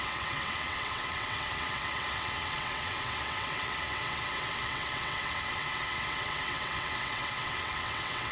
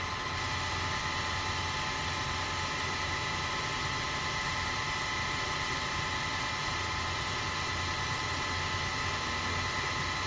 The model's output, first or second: first